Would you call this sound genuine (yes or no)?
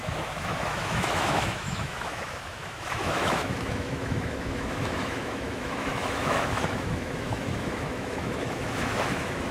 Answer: no